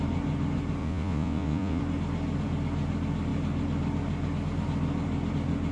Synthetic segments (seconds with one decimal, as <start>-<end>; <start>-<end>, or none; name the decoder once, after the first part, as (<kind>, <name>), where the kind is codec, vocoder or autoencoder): 0.8-1.8 (vocoder, Vocos)